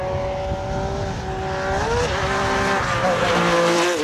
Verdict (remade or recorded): recorded